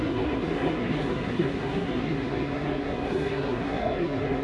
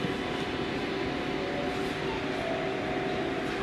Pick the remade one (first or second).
first